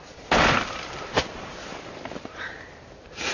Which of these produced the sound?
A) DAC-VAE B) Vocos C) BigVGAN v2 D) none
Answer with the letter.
C